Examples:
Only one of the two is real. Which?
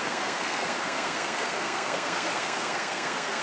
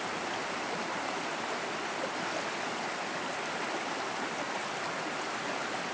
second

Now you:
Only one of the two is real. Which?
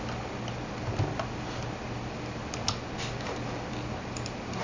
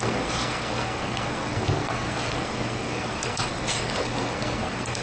first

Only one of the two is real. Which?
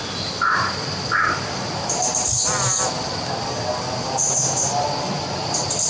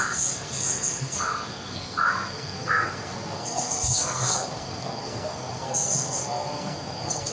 first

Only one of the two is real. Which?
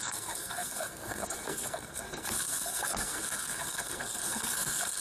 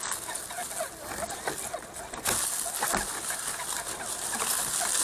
second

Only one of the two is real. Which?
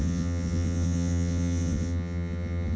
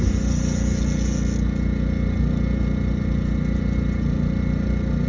second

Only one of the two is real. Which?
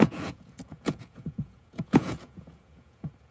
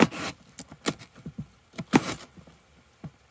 second